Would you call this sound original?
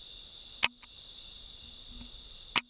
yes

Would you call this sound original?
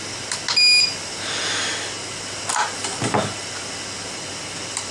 yes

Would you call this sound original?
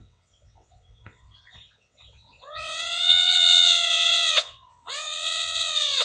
no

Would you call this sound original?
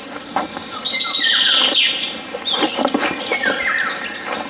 yes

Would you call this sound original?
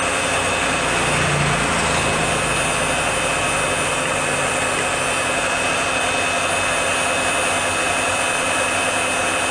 yes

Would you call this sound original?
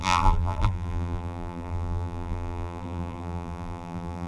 no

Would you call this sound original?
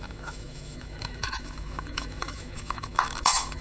no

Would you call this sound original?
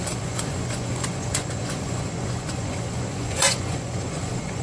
no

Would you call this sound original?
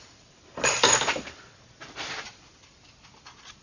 no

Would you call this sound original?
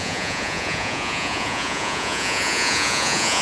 no